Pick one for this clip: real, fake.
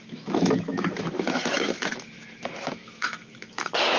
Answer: fake